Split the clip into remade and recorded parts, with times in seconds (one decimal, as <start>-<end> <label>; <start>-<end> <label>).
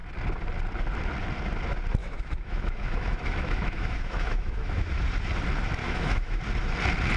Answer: 0.0-2.0 recorded; 2.0-4.9 remade; 4.9-5.8 recorded; 5.8-6.4 remade; 6.4-7.2 recorded